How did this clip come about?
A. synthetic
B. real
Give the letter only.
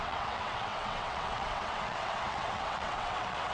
A